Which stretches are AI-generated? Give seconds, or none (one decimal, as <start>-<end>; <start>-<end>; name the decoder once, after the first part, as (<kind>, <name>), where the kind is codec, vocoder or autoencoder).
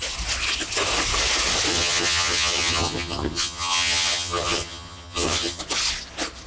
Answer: 1.7-5.6 (vocoder, HiFi-GAN)